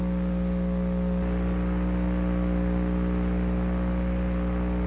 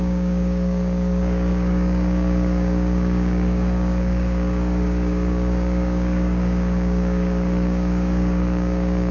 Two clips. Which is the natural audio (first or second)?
first